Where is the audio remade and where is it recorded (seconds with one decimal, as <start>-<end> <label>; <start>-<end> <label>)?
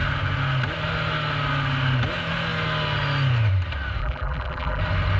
0.0-4.0 recorded; 4.0-4.8 remade; 4.8-5.2 recorded